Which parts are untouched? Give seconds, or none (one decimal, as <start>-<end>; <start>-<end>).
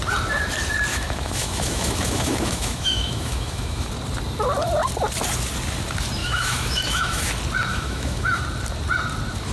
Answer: 0.0-0.9; 3.9-6.2; 7.3-7.7; 8.4-9.5